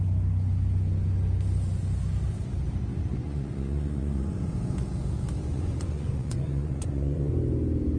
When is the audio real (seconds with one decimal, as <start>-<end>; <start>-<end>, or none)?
0.0-2.9; 4.5-5.4; 7.3-8.0